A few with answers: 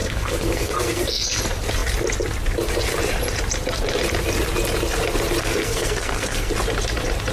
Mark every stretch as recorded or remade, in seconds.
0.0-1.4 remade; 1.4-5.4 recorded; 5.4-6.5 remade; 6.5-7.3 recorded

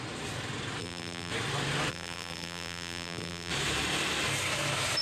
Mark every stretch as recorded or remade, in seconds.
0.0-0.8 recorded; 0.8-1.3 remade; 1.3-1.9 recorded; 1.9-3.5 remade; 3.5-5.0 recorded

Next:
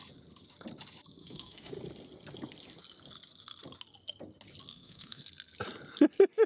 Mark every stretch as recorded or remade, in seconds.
0.0-1.2 recorded; 1.2-1.7 remade; 1.7-4.7 recorded; 4.7-5.2 remade; 5.2-6.5 recorded